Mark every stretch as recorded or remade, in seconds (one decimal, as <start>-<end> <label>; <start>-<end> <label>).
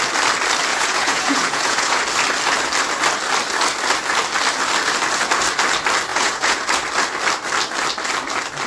0.0-0.7 recorded; 0.7-2.0 remade; 2.0-6.1 recorded; 6.1-6.6 remade; 6.6-8.7 recorded